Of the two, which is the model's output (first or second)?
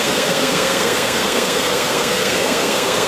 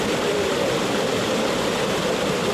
first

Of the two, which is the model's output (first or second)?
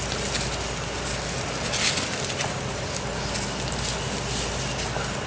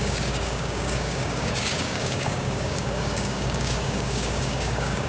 second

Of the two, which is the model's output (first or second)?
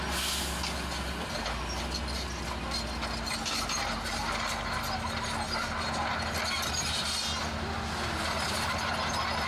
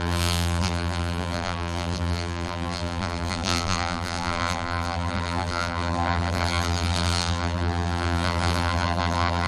second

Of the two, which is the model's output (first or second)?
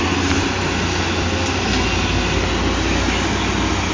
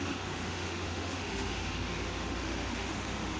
second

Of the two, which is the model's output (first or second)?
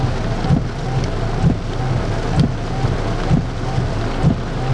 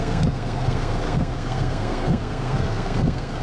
second